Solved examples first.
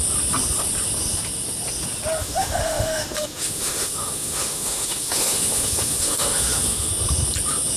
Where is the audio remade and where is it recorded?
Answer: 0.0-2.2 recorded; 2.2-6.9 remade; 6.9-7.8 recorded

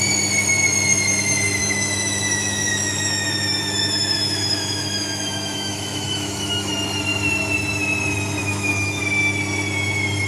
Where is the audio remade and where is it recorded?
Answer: 0.0-1.6 recorded; 1.6-6.7 remade; 6.7-8.4 recorded; 8.4-9.0 remade; 9.0-10.3 recorded

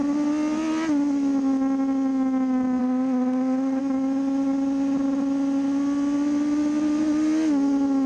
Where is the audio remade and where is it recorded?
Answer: 0.0-2.8 recorded; 2.8-3.8 remade; 3.8-8.1 recorded